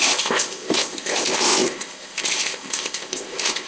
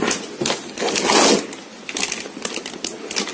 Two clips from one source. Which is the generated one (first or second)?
first